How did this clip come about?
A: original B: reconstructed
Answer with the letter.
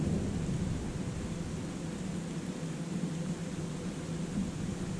A